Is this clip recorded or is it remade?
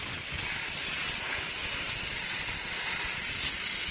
recorded